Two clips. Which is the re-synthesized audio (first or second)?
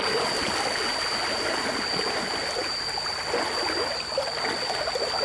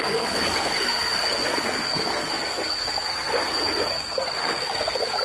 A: second